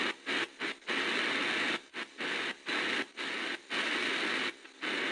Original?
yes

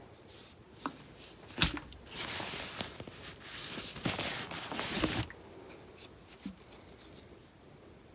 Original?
yes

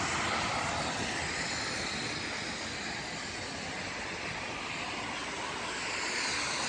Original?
yes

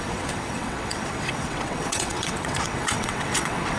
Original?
no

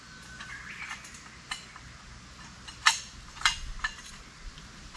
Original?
yes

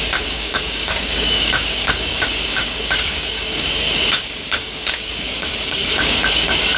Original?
no